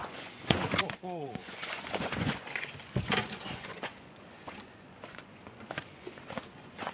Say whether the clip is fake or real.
fake